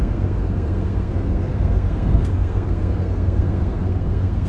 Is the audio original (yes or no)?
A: no